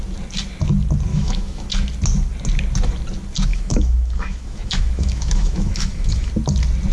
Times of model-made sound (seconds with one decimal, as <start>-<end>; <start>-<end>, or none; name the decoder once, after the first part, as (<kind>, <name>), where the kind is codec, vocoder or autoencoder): 1.1-1.7 (autoencoder, DAC-VAE); 3.5-6.3